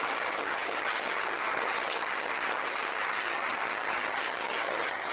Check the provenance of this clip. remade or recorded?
remade